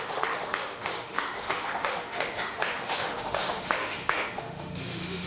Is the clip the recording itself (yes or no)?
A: no